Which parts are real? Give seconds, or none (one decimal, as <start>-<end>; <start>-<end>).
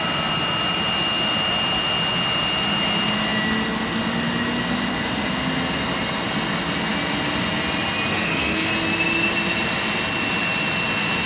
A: 0.0-8.1; 8.7-11.3